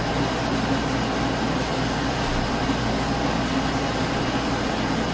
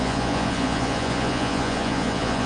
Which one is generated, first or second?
second